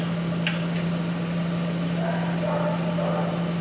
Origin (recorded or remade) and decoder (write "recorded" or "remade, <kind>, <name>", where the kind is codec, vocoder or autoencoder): recorded